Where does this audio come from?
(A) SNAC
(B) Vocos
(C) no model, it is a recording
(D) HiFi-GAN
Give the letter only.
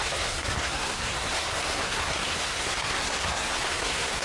A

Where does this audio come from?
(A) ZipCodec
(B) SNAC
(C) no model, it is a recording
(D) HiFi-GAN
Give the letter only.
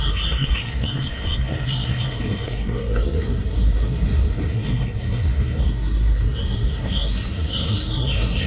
B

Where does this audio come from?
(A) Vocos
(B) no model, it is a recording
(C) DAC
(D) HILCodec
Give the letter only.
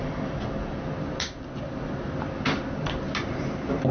B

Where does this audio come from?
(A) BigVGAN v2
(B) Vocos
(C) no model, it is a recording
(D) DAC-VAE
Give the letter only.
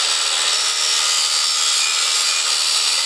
C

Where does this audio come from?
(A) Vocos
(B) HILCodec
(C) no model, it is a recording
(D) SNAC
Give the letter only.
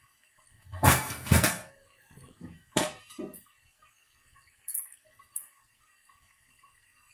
D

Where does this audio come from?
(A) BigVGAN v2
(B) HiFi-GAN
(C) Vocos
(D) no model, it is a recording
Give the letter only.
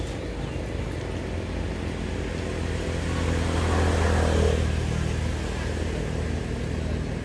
D